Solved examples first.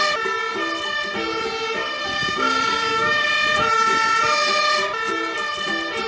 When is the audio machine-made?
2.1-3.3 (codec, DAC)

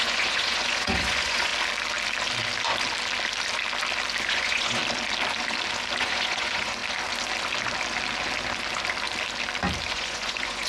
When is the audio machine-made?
0.0-1.5 (vocoder, Vocos); 4.2-4.8; 6.0-6.8; 9.9-10.7

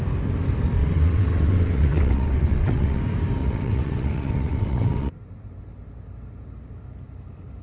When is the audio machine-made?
0.8-3.0 (vocoder, WaveNeXt); 3.4-5.1